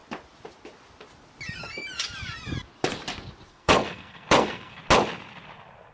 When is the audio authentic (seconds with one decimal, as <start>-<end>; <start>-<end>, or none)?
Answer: 0.0-3.5; 4.8-5.9